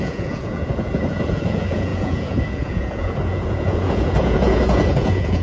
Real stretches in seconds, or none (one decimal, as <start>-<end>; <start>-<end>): none